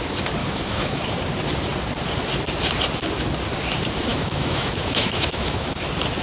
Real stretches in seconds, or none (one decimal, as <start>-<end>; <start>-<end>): 0.0-0.4; 1.0-4.1; 5.8-6.2